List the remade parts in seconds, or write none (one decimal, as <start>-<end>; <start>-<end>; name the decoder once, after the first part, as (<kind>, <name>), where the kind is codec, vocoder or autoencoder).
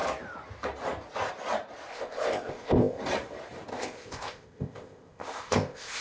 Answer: 1.9-3.0 (codec, ZipCodec); 3.7-6.0